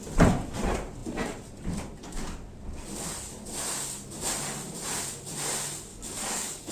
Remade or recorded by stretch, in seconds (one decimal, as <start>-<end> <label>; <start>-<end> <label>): 0.0-5.9 recorded; 5.9-6.7 remade